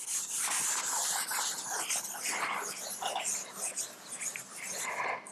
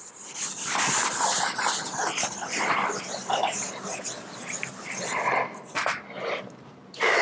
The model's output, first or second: second